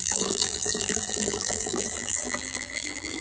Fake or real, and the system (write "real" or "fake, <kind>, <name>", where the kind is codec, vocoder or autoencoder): fake, vocoder, BigVGAN v2